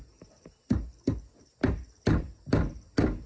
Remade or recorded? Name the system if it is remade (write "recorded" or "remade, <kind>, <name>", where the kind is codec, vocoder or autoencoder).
recorded